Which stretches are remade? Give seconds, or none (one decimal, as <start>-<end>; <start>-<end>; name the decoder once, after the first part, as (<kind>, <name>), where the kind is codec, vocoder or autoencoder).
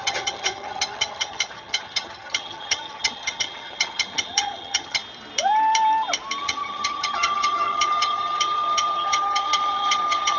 0.0-5.0 (vocoder, HiFi-GAN); 6.4-10.4